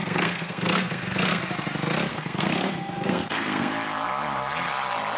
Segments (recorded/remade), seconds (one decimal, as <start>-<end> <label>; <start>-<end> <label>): 0.0-1.4 remade; 1.4-2.1 recorded; 2.1-3.7 remade; 3.7-5.2 recorded